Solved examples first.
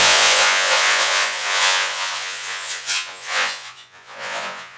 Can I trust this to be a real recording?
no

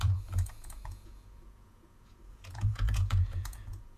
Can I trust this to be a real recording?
no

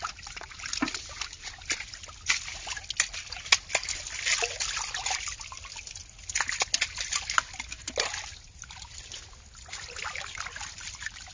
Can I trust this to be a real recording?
yes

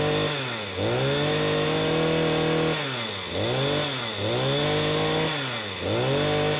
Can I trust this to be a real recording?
yes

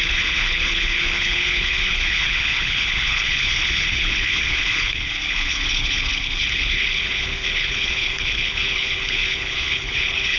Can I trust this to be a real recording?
no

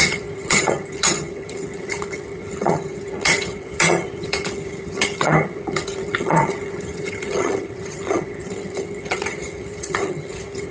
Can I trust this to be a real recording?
no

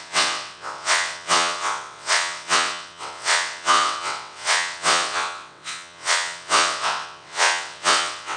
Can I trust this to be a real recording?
no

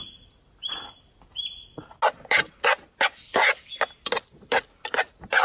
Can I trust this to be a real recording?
yes